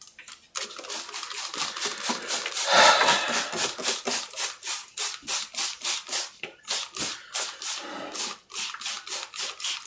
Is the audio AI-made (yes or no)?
yes